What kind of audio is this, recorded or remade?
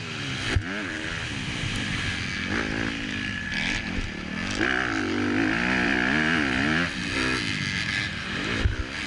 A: recorded